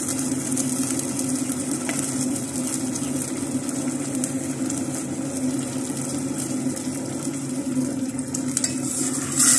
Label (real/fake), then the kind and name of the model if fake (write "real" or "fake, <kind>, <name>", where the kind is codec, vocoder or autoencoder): real